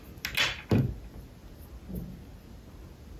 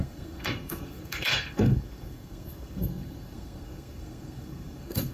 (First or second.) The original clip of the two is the first